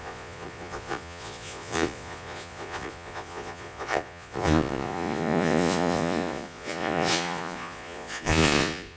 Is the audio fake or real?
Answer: fake